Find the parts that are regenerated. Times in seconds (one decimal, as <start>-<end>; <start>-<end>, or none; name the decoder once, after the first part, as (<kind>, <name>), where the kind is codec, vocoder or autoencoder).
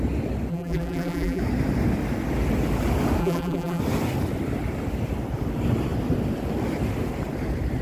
0.5-1.4 (vocoder, BigVGAN v2); 3.2-3.8